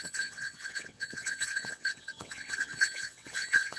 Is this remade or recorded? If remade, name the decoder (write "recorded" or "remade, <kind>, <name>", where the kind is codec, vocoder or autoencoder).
remade, vocoder, WaveNeXt